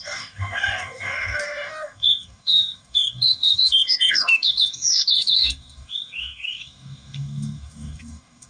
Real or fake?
fake